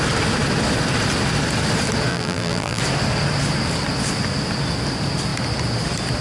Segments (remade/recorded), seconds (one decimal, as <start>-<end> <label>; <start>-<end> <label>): 0.0-2.1 recorded; 2.1-2.8 remade; 2.8-6.2 recorded